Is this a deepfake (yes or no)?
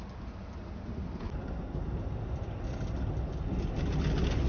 no